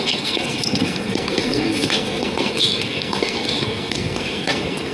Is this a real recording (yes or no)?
no